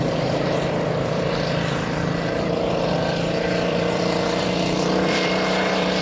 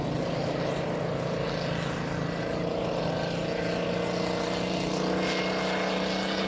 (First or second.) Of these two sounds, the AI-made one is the first